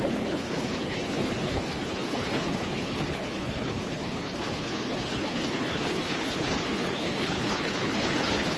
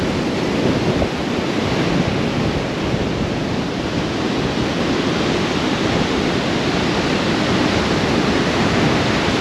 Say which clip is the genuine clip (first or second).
second